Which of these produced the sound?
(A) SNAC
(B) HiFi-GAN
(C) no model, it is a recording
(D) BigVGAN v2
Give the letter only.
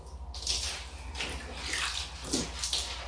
C